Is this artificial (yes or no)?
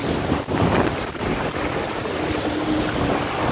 no